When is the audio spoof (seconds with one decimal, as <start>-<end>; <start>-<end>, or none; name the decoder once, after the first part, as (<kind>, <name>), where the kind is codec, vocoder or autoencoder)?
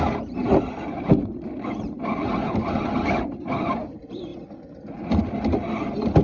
none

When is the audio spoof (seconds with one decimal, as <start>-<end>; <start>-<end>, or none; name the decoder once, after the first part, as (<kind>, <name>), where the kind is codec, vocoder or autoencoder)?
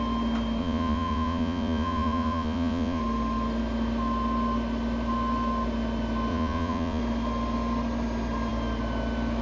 0.6-3.0 (vocoder, Vocos); 6.3-7.0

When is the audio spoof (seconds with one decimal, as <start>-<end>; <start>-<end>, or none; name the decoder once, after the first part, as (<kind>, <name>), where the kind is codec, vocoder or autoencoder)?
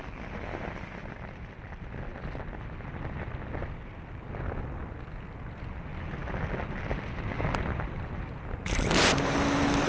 none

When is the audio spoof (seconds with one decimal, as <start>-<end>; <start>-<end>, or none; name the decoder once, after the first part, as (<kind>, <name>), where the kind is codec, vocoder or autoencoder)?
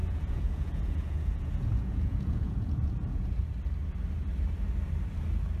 0.0-3.4 (vocoder, Vocos)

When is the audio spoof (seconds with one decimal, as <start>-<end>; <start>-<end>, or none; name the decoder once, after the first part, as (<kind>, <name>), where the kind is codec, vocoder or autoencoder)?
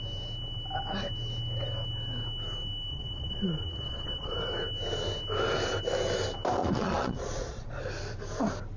2.9-4.3 (vocoder, Vocos); 6.6-7.8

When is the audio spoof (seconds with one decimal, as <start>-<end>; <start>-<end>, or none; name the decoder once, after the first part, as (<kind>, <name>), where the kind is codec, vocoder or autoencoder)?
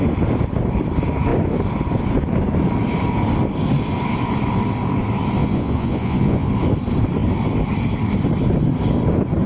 5.4-6.5 (vocoder, Vocos)